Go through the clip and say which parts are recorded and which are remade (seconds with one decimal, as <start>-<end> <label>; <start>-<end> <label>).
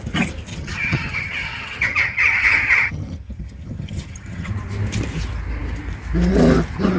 0.0-0.5 recorded; 0.5-4.5 remade; 4.5-7.0 recorded